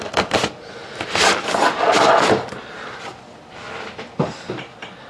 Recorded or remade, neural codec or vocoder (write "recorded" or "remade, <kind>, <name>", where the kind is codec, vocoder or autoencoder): remade, vocoder, BigVGAN v2